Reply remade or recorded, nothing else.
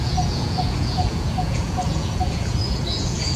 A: remade